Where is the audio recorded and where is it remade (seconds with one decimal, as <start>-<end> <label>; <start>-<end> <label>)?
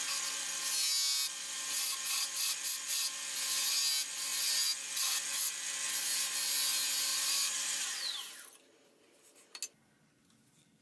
0.0-7.1 recorded; 7.1-9.5 remade; 9.5-10.8 recorded